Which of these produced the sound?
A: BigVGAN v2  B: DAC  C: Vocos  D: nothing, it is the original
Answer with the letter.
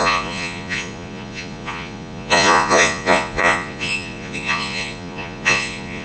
C